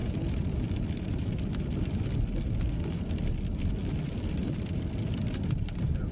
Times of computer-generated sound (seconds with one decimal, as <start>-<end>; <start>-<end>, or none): 0.0-6.1